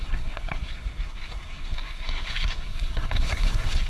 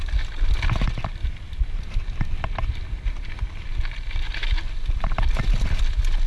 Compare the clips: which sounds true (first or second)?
second